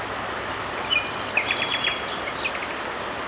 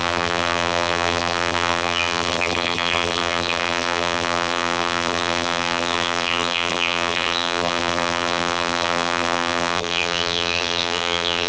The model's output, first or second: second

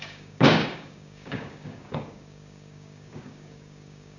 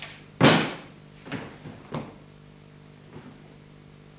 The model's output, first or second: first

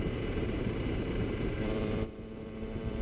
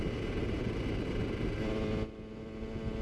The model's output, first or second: first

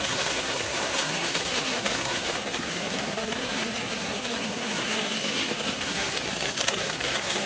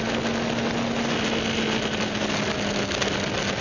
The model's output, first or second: first